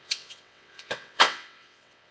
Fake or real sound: fake